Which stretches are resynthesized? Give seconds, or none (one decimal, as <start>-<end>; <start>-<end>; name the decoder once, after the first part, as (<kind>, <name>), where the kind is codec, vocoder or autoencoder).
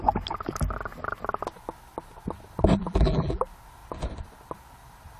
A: 2.8-3.4 (vocoder, BigVGAN v2)